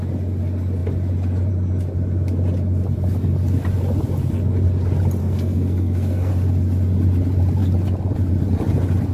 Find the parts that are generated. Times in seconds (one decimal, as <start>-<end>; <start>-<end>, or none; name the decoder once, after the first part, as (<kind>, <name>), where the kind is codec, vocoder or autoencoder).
5.2-6.3 (codec, SNAC)